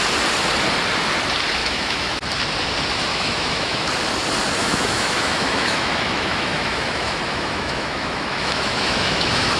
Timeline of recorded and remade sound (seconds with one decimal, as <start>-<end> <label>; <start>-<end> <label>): 0.0-1.6 recorded; 1.6-2.2 remade; 2.2-3.1 recorded; 3.1-3.9 remade; 3.9-4.6 recorded; 4.6-9.6 remade